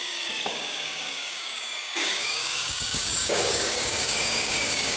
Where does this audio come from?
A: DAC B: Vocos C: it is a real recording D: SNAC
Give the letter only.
A